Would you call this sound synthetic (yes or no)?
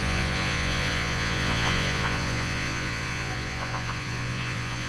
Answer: yes